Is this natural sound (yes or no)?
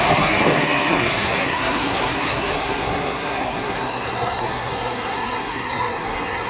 no